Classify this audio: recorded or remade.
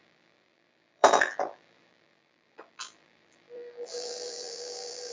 remade